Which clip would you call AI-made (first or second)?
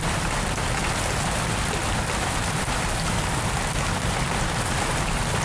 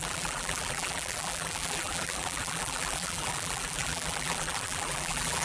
second